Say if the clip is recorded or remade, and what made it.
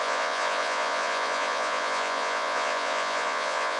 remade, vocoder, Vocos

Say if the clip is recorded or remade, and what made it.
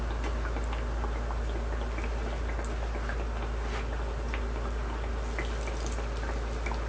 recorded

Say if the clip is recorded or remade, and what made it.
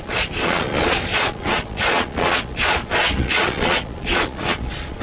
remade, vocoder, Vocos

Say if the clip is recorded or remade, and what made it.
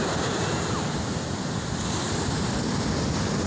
recorded